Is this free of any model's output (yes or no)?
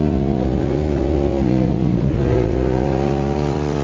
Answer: no